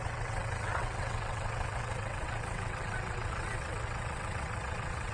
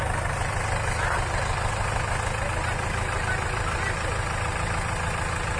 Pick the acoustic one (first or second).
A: second